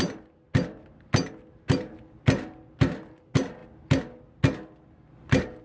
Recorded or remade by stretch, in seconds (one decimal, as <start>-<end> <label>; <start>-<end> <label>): 0.0-5.6 recorded